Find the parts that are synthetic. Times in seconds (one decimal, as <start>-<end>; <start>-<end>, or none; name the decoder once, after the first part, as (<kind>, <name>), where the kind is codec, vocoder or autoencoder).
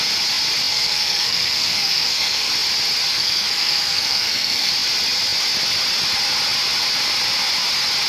0.7-2.5 (codec, SNAC); 3.1-4.7